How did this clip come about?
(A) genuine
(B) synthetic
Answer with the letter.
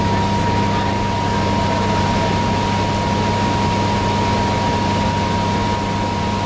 A